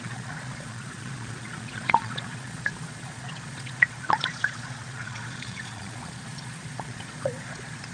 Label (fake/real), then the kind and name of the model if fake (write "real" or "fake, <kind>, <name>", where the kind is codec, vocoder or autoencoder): fake, vocoder, Vocos